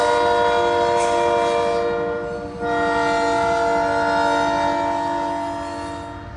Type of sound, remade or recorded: recorded